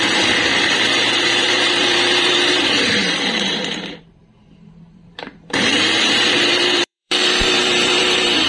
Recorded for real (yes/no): no